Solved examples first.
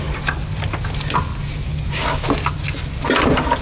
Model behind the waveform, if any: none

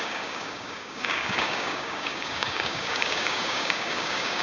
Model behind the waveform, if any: codec, DAC